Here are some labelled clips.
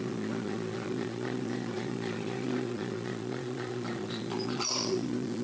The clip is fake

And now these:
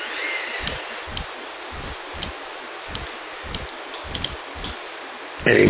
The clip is real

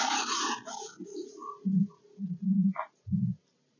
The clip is real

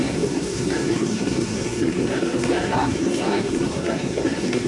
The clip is fake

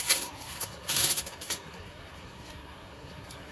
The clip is fake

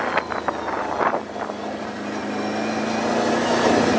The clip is real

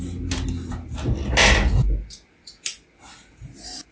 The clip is real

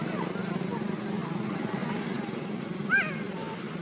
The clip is real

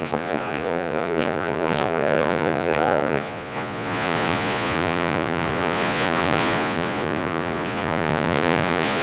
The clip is fake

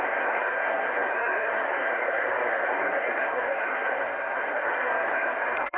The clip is fake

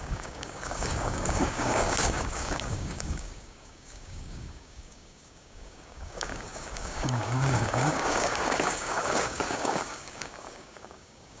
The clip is fake